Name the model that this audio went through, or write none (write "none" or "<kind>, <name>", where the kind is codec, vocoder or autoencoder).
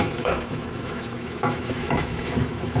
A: autoencoder, DAC-VAE